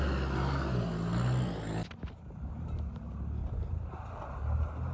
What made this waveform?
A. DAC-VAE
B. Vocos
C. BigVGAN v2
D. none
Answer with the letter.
D